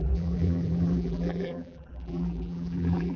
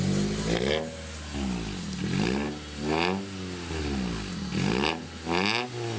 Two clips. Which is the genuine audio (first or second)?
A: second